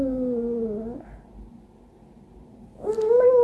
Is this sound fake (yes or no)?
no